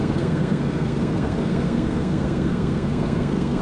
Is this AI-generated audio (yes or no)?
yes